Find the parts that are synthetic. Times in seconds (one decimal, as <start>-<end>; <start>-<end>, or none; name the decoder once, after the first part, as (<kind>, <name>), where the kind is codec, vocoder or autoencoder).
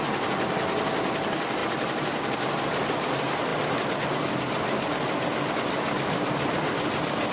none